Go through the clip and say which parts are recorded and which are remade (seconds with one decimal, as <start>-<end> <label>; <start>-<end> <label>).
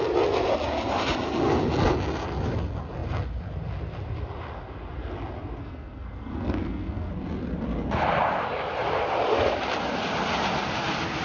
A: 0.0-5.6 recorded; 5.6-7.1 remade; 7.1-11.2 recorded